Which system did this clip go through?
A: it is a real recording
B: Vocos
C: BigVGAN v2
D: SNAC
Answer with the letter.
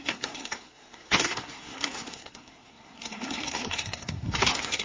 D